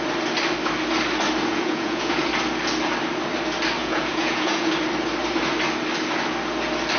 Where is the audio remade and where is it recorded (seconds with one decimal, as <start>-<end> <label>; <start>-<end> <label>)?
0.0-1.5 recorded; 1.5-2.3 remade; 2.3-3.8 recorded; 3.8-4.7 remade; 4.7-7.0 recorded

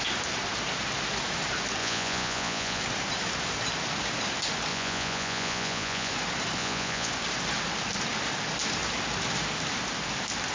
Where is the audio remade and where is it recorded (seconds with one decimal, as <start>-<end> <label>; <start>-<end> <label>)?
0.0-1.8 recorded; 1.8-2.8 remade; 2.8-4.7 recorded; 4.7-6.1 remade; 6.1-6.6 recorded; 6.6-7.1 remade; 7.1-10.5 recorded

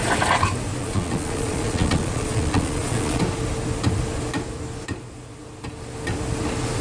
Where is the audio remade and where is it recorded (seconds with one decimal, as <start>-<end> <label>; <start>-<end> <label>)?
0.0-0.8 recorded; 0.8-3.2 remade; 3.2-6.8 recorded

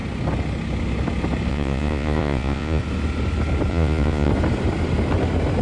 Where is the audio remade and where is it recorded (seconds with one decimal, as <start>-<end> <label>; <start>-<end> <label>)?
0.0-1.5 recorded; 1.5-2.8 remade; 2.8-3.7 recorded; 3.7-4.3 remade; 4.3-5.6 recorded

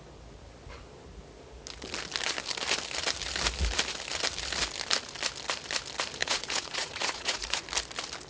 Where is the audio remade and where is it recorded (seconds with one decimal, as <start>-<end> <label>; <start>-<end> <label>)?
0.0-6.2 recorded; 6.2-7.6 remade; 7.6-8.3 recorded

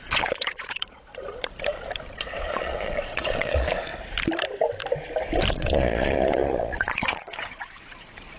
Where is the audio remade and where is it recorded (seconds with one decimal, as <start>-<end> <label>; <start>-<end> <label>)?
0.0-1.1 remade; 1.1-2.4 recorded; 2.4-3.9 remade; 3.9-5.5 recorded; 5.5-8.4 remade